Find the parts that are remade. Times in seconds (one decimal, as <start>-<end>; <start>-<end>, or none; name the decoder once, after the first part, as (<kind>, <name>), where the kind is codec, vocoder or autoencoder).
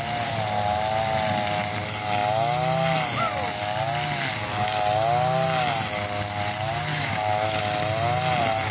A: 6.9-7.6 (autoencoder, DAC-VAE)